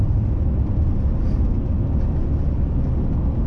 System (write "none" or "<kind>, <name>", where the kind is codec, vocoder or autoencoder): none